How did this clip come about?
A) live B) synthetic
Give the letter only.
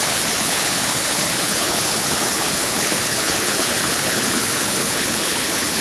B